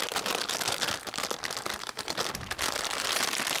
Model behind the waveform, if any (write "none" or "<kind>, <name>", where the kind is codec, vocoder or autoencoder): none